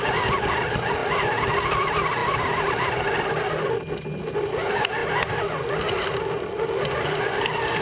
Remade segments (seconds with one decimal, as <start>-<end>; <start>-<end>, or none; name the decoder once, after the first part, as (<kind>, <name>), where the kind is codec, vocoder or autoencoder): none